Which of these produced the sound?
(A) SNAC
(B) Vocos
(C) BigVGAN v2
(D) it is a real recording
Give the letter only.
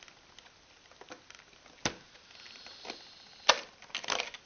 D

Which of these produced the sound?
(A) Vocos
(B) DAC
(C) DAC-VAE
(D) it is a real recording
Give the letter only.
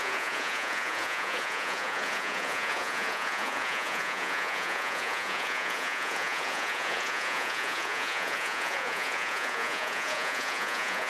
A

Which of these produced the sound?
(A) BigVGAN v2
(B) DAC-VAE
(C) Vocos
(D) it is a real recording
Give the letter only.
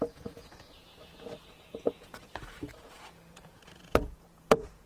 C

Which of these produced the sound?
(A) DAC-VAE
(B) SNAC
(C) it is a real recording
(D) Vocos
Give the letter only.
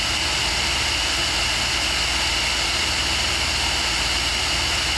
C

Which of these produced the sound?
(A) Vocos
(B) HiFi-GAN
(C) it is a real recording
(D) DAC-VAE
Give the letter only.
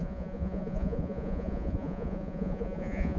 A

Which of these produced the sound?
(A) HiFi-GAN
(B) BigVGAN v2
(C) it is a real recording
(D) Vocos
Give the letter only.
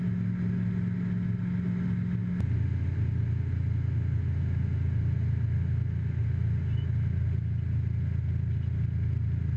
C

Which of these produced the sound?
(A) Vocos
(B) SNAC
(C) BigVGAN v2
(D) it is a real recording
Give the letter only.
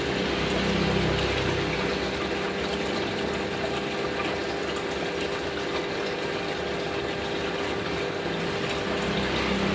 D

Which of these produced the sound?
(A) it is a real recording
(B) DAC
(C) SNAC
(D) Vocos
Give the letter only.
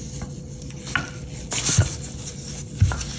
A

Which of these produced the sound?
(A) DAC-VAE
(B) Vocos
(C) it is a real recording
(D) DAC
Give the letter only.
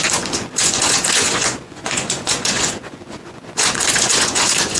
B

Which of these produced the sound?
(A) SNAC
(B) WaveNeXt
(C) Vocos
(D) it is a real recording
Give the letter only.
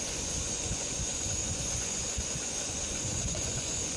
C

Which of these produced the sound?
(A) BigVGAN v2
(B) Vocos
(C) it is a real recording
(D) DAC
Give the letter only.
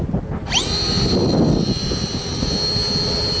C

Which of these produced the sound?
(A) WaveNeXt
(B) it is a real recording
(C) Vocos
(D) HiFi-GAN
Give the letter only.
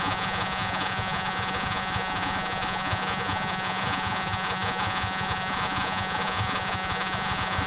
C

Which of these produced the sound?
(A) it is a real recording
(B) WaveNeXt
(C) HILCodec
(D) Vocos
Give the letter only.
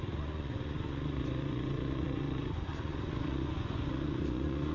D